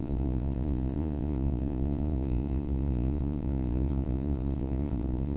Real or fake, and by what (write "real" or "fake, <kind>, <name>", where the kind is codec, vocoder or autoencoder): fake, vocoder, Vocos